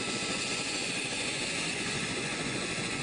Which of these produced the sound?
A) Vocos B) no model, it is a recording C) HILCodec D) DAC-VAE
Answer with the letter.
A